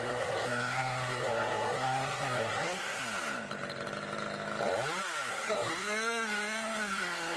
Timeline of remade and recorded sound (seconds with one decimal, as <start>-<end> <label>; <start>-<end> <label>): 0.0-3.0 remade; 3.0-5.3 recorded; 5.3-7.4 remade